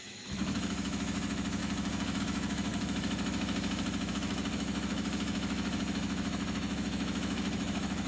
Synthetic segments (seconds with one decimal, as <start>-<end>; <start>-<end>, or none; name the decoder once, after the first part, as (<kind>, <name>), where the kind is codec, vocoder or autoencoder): 0.0-8.1 (autoencoder, DAC-VAE)